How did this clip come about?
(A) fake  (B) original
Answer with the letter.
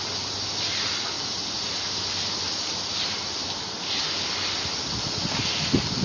B